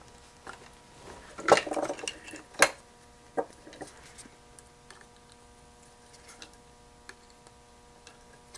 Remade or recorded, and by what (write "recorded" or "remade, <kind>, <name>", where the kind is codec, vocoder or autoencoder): recorded